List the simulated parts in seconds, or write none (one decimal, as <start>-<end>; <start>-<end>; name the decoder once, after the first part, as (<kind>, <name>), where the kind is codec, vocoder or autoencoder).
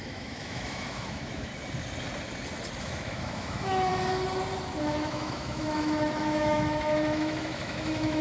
0.0-1.5 (autoencoder, DAC-VAE); 2.8-3.9; 4.8-8.2